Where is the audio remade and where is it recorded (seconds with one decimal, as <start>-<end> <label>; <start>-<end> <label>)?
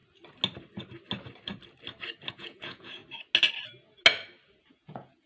0.0-2.3 recorded; 2.3-3.0 remade; 3.0-4.6 recorded; 4.6-5.3 remade